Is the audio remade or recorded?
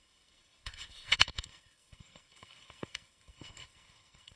remade